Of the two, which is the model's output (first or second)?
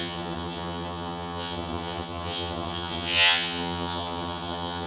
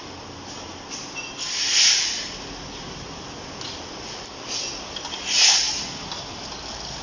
first